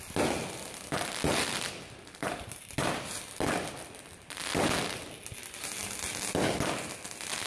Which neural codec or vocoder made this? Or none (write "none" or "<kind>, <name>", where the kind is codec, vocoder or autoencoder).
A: none